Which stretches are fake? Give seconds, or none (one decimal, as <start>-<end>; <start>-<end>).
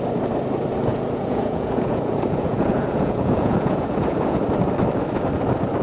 0.9-4.4